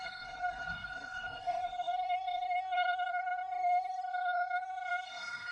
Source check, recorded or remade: remade